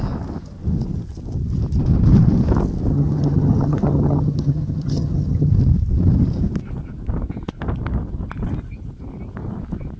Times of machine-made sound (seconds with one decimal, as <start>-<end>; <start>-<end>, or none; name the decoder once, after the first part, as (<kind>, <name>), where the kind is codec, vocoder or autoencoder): 2.9-5.5 (vocoder, HiFi-GAN)